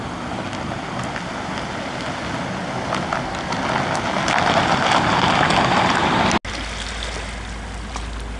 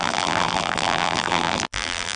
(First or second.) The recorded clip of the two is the first